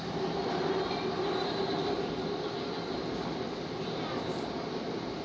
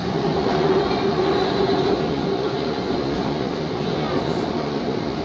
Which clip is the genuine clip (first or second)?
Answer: first